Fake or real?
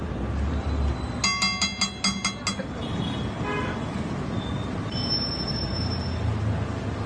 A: real